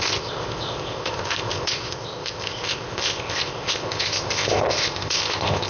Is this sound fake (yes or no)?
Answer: yes